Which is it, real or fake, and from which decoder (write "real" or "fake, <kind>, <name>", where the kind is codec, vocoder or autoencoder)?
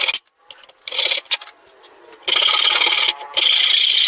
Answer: real